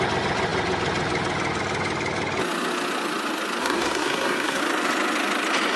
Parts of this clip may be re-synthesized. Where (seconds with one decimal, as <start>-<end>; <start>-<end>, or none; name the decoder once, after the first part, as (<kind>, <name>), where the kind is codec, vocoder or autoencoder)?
3.6-4.6 (codec, SNAC)